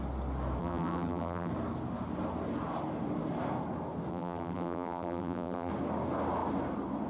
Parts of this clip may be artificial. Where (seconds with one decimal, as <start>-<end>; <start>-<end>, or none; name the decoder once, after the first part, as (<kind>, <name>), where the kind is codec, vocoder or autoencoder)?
0.6-1.5 (vocoder, BigVGAN v2); 4.1-5.7